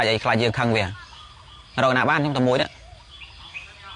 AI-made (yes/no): no